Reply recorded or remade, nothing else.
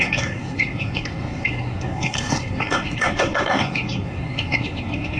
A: remade